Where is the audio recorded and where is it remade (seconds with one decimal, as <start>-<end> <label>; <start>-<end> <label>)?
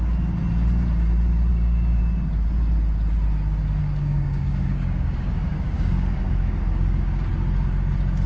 0.0-1.5 recorded; 1.5-2.0 remade; 2.0-3.8 recorded; 3.8-7.3 remade; 7.3-8.3 recorded